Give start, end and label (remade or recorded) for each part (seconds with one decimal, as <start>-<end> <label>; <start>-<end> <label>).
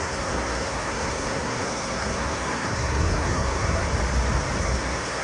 0.0-3.8 remade; 3.8-4.6 recorded; 4.6-5.2 remade